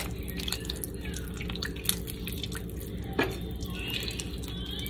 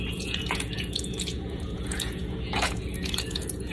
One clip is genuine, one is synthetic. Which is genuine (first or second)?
first